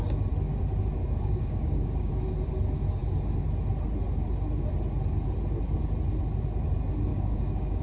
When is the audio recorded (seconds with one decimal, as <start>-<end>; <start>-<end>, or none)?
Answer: 0.0-1.0; 2.1-7.1